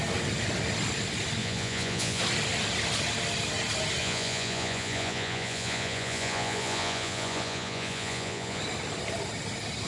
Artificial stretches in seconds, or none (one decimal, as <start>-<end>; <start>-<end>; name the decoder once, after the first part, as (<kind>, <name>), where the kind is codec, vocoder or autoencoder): 1.4-2.2 (vocoder, Vocos); 4.0-8.6